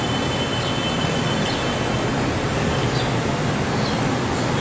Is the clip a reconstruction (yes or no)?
no